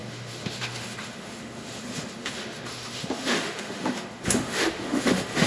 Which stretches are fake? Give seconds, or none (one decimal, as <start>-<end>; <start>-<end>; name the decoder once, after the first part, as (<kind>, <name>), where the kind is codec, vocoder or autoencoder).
0.0-5.5 (autoencoder, DAC-VAE)